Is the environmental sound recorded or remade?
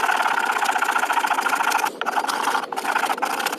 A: remade